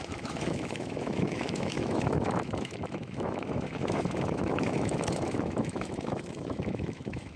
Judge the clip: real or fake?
fake